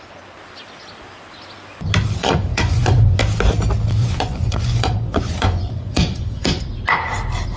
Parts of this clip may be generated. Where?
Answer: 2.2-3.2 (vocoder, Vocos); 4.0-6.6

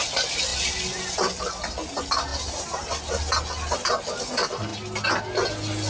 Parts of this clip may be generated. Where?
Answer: none

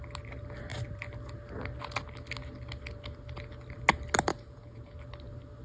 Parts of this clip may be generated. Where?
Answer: 4.3-5.0 (vocoder, Vocos)

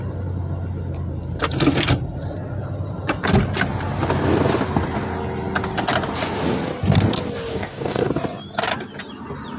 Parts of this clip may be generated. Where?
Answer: 7.5-8.1 (codec, DAC)

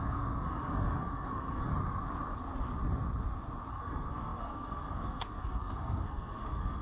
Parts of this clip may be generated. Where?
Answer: 0.0-1.7 (codec, SNAC); 3.7-6.8

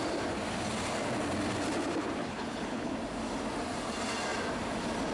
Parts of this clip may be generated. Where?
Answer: 2.2-2.9 (codec, HILCodec)